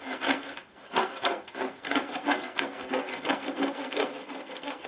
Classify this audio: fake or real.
fake